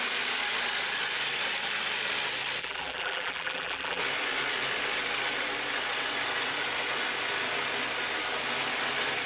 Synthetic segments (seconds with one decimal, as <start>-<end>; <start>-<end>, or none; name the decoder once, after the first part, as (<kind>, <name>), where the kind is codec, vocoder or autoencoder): 2.6-4.0 (vocoder, BigVGAN v2)